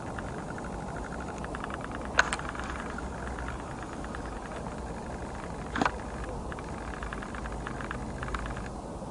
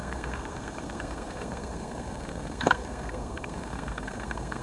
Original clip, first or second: first